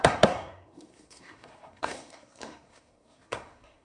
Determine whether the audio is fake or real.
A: fake